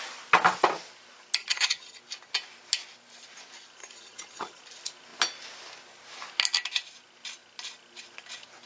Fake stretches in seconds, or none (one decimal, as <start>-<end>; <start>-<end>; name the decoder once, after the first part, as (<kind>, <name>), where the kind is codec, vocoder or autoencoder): 1.4-2.0 (vocoder, HiFi-GAN); 3.8-4.6